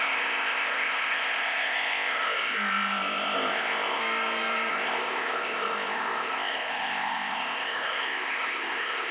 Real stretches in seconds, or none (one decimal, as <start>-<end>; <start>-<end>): 4.0-4.7